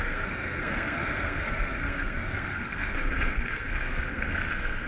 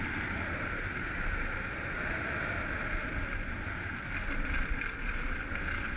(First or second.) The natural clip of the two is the second